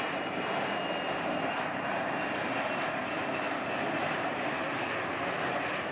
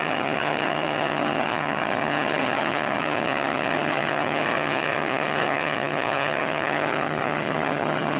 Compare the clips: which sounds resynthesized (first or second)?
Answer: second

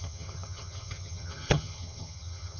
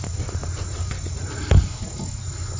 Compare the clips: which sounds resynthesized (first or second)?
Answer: first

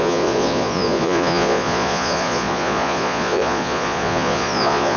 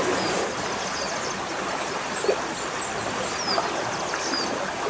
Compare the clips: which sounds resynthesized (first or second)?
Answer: first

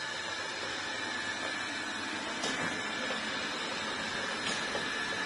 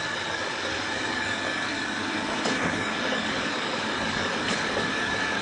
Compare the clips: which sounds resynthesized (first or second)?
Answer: second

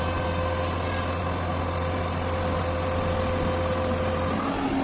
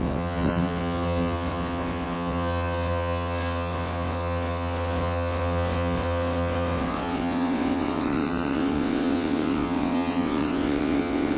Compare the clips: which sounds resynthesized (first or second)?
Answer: second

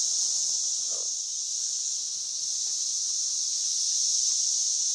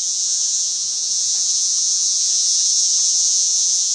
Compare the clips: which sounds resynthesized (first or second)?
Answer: second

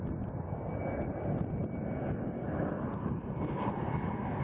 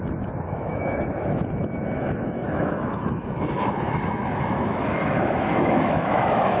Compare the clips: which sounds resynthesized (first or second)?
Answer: second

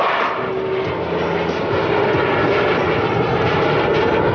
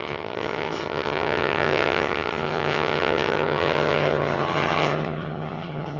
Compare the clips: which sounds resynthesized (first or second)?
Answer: second